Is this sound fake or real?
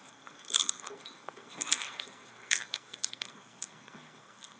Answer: fake